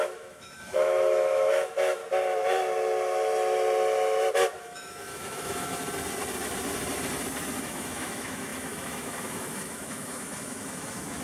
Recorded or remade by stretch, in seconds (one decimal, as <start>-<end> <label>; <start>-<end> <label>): 0.0-2.0 remade; 2.0-4.6 recorded; 4.6-5.8 remade; 5.8-7.6 recorded; 7.6-11.2 remade